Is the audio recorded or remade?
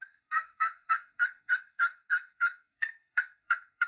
remade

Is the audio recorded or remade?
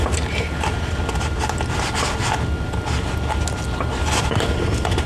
recorded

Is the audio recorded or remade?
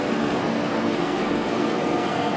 remade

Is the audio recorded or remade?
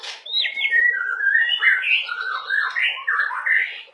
recorded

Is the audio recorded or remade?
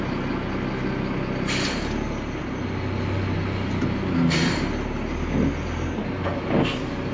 recorded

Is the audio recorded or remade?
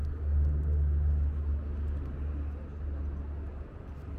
recorded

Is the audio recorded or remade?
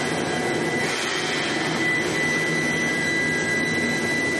recorded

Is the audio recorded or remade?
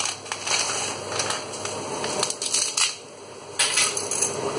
recorded